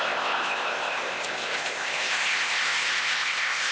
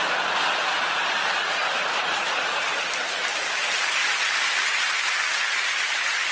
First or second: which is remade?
first